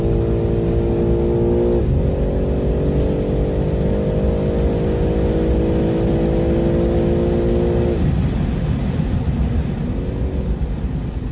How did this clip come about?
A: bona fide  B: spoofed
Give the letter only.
A